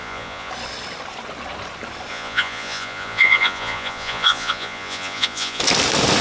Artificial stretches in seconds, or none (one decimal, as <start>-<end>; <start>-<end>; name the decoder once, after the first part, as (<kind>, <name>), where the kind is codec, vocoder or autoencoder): 0.0-0.5 (vocoder, Vocos); 2.1-5.6